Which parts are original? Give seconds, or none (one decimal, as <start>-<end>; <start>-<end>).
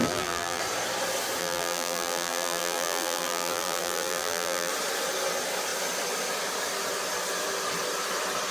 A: 0.6-1.4; 4.7-8.5